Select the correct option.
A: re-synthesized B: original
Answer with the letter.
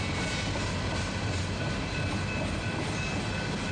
B